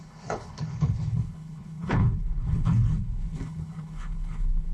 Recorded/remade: remade